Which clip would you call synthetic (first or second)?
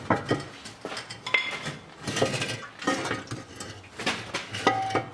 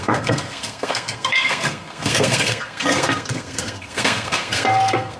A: second